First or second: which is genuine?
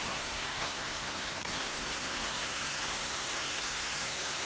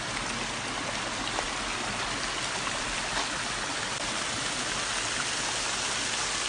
second